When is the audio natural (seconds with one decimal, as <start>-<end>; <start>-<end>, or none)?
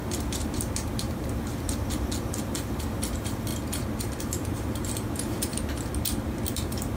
3.5-4.2; 5.5-6.5